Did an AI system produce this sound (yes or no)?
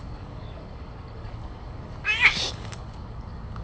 yes